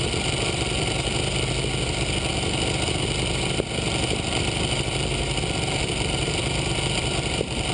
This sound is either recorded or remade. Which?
remade